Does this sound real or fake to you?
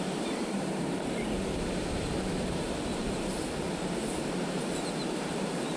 fake